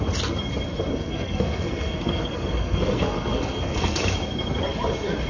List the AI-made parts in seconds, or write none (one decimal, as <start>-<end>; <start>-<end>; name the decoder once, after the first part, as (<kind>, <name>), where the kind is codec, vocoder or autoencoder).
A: 0.9-4.0 (codec, SNAC)